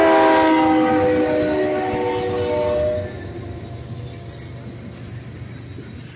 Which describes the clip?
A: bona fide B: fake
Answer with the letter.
A